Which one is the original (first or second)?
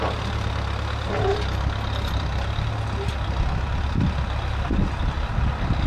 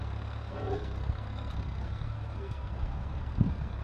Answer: first